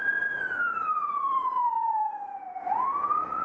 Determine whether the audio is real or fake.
fake